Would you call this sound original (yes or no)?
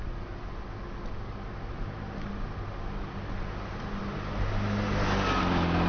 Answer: yes